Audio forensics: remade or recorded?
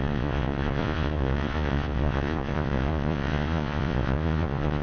remade